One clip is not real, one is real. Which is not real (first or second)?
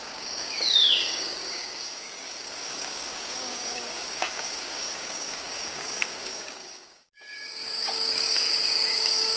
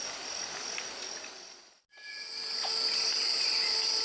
first